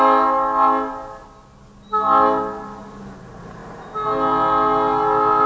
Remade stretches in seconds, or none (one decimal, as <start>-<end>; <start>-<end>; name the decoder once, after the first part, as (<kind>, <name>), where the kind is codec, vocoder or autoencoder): none

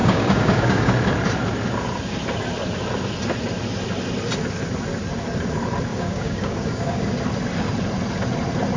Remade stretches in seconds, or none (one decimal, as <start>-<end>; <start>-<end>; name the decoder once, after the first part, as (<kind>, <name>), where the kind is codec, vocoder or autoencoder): 0.0-0.9 (codec, DAC); 5.9-7.0

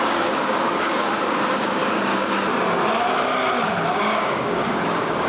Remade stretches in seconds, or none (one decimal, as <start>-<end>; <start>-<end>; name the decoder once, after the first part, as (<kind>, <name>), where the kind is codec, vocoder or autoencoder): 0.0-2.1 (codec, DAC); 3.9-5.3

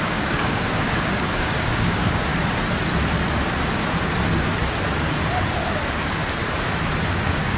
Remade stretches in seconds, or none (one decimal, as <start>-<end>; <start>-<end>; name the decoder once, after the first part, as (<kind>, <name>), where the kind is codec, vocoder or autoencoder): 0.0-2.3 (codec, DAC); 5.6-6.2; 7.1-7.6

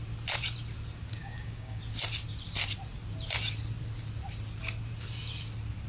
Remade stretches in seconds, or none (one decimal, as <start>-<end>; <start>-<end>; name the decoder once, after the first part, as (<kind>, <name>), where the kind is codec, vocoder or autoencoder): 1.2-1.8 (codec, DAC)

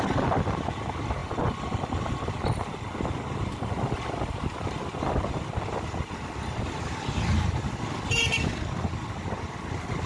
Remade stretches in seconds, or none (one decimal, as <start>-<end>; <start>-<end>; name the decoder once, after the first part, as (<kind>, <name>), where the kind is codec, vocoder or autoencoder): none

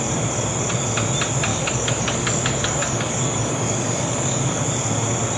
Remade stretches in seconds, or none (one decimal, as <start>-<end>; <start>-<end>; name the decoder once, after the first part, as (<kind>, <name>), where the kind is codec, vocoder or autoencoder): 1.5-4.6 (codec, DAC)